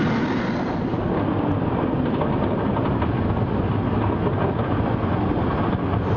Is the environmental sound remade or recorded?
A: recorded